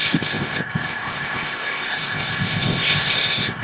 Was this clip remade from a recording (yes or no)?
yes